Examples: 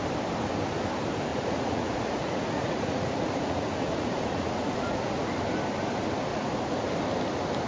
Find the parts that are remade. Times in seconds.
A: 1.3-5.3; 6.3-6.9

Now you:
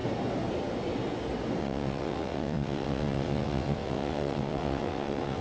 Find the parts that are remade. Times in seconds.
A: 1.6-5.4

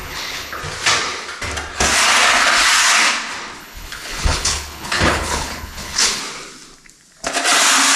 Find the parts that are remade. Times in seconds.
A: 0.0-0.6; 3.6-6.2

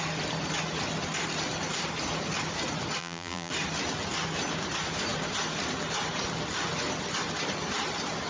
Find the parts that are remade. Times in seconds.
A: 3.0-3.5